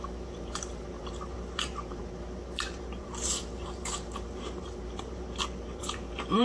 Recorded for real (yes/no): no